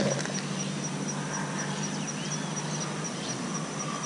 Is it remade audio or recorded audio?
recorded